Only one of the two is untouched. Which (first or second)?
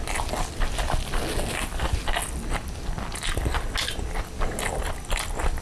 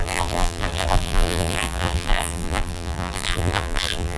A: first